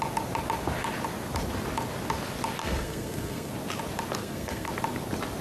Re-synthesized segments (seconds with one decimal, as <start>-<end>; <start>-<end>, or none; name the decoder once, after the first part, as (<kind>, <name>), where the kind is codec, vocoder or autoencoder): 2.6-3.5 (codec, SNAC); 4.2-4.7